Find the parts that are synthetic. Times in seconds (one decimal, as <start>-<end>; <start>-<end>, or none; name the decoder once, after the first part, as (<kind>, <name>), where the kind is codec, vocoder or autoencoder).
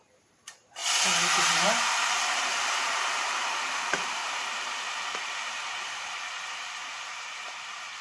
0.0-0.8 (vocoder, BigVGAN v2); 1.4-8.0